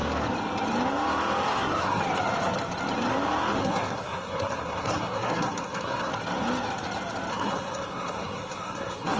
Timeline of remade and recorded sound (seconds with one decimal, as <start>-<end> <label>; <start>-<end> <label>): 0.0-1.5 recorded; 1.5-2.0 remade; 2.0-3.6 recorded; 3.6-6.1 remade; 6.1-7.3 recorded; 7.3-9.2 remade